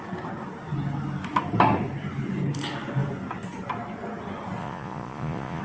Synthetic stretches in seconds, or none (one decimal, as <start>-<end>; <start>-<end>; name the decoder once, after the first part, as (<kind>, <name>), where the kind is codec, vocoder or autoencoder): 4.6-5.6 (vocoder, Vocos)